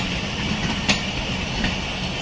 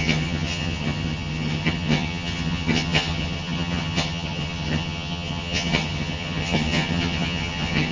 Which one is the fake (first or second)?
second